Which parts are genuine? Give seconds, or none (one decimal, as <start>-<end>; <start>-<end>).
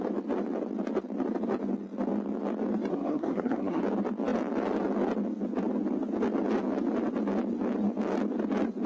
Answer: 0.0-2.9; 3.8-8.9